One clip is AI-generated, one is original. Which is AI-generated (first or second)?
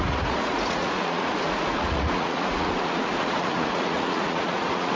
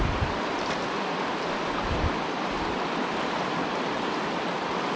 first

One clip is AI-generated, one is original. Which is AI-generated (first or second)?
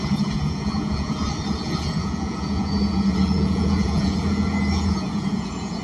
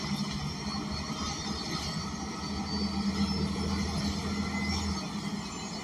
first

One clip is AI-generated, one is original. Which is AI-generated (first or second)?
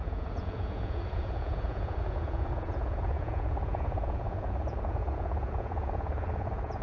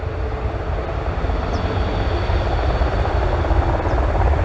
first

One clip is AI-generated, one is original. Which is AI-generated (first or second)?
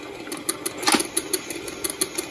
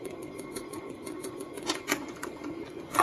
second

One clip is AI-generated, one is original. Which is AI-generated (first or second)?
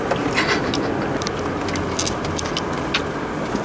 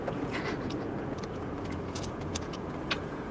second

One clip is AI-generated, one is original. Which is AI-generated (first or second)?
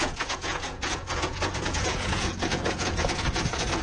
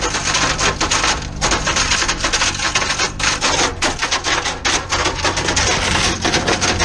first